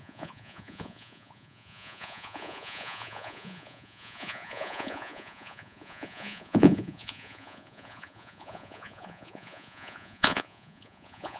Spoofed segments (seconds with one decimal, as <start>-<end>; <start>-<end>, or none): 0.0-11.4